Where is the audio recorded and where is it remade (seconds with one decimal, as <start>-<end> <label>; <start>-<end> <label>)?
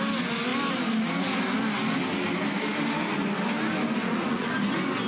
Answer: 0.0-4.0 recorded; 4.0-4.5 remade; 4.5-5.1 recorded